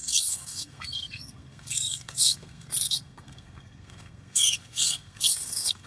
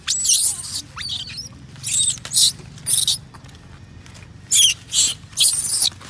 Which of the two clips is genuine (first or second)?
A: second